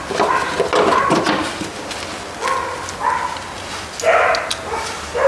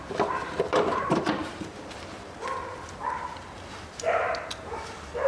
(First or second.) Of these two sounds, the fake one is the second